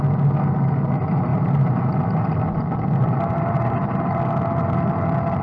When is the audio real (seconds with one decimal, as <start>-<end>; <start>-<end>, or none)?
0.0-1.3; 1.8-3.3; 4.2-5.4